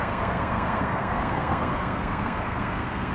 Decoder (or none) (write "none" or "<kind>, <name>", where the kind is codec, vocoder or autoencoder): codec, SNAC